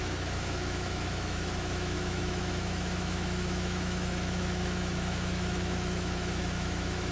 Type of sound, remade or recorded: remade